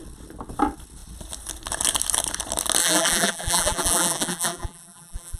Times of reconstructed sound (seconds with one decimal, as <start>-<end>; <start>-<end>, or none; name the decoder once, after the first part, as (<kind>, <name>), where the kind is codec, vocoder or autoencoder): 2.8-5.4 (vocoder, BigVGAN v2)